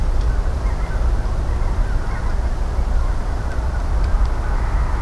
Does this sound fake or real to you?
real